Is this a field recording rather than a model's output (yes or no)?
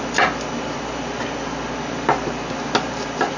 yes